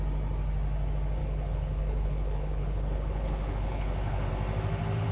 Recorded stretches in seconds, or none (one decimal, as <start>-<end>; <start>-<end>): 0.0-1.2; 4.3-5.1